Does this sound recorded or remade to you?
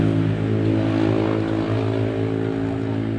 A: recorded